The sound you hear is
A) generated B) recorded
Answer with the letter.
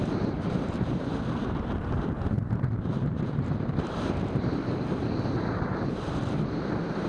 A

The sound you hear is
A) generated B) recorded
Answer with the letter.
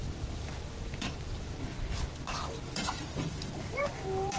B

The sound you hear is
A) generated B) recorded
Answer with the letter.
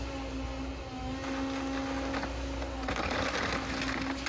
B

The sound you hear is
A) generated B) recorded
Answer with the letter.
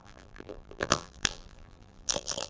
A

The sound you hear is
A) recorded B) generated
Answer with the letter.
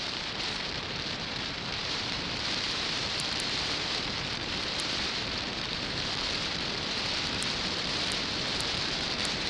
B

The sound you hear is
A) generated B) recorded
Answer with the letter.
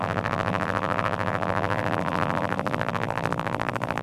A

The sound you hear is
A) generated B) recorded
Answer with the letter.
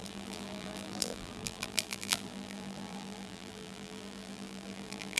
A